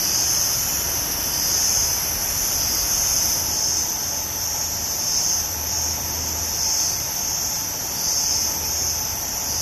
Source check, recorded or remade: remade